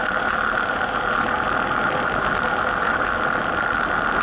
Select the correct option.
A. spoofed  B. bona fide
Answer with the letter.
B